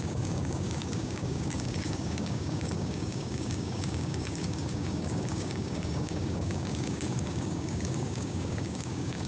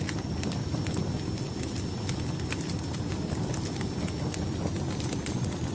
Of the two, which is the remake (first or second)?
first